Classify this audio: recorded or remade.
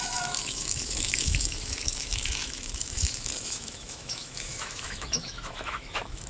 remade